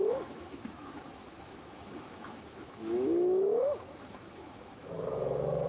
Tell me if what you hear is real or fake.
fake